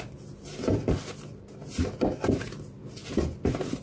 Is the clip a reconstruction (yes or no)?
no